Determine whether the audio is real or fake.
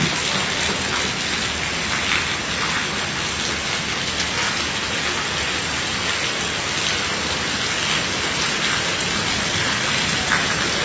real